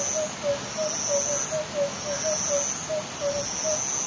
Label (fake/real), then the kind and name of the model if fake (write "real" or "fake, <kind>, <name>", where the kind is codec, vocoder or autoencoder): real